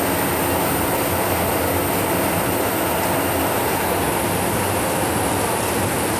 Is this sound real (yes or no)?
yes